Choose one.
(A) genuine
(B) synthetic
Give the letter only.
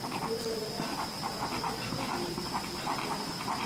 A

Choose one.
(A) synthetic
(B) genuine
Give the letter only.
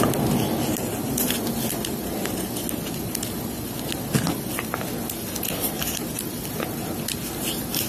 B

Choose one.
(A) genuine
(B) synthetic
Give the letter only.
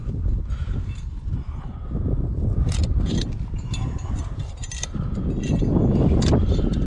A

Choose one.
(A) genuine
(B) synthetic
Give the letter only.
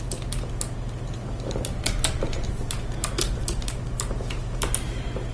A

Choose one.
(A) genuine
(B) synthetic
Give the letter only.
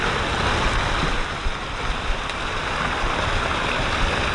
A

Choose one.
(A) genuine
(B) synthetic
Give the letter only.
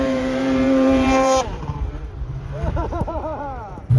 B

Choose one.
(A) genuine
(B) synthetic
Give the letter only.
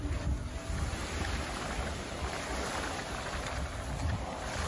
A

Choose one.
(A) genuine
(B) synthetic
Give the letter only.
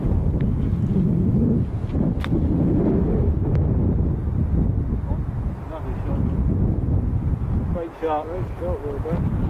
A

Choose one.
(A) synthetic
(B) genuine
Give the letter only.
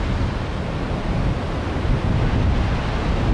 B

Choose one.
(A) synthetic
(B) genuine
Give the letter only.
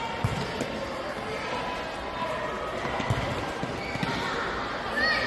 B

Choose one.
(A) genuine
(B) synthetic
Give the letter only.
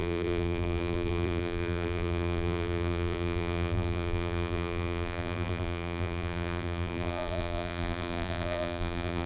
B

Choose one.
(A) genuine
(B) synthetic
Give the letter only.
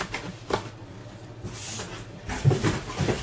B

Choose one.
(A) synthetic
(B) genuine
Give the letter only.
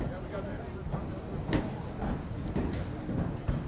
B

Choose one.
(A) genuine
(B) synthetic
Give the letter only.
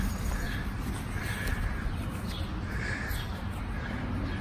A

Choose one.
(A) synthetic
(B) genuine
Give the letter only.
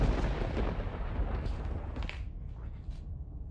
B